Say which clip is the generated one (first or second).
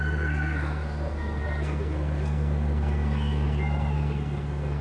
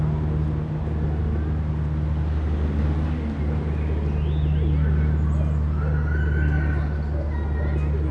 first